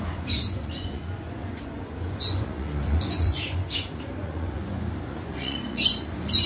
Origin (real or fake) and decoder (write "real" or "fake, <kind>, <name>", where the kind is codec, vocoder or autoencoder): fake, vocoder, Vocos